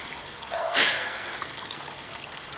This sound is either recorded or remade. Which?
remade